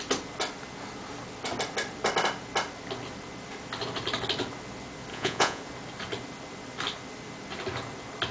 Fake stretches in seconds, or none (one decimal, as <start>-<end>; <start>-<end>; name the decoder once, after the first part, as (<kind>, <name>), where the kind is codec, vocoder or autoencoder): 5.1-5.6 (vocoder, Vocos)

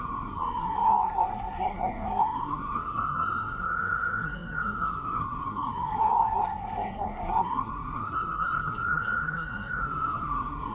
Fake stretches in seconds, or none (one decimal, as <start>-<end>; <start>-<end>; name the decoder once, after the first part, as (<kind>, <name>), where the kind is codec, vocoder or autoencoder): 0.0-10.7 (codec, SNAC)

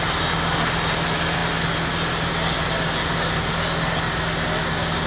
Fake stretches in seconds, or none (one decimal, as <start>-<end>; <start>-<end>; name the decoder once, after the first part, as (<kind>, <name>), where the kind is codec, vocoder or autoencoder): none

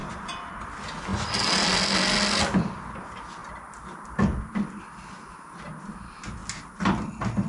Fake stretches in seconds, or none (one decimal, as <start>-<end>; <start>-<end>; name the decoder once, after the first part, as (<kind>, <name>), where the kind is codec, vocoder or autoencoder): 0.0-0.5 (vocoder, BigVGAN v2)

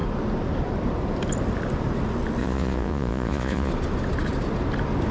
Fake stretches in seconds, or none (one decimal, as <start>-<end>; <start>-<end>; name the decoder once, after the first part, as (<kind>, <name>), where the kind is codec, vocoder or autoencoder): 2.4-3.7 (vocoder, Vocos)

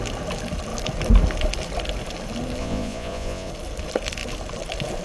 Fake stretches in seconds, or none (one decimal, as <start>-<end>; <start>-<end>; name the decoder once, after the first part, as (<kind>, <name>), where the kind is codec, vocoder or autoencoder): 2.6-3.5 (vocoder, Vocos)

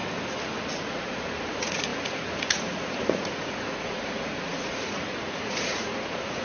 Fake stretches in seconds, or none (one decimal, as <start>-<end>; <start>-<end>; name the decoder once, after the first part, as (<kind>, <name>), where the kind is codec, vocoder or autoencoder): 0.8-6.4 (vocoder, Vocos)